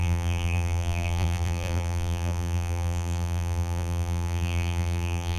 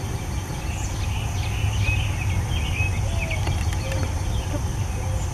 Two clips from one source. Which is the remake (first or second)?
first